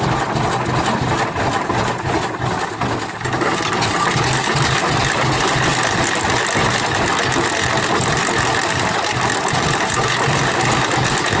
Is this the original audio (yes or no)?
yes